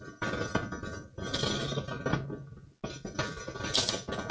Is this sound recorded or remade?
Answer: recorded